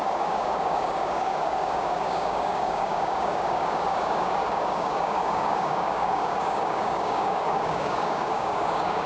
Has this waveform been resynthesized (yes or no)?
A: yes